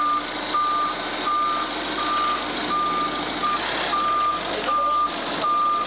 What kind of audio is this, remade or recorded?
recorded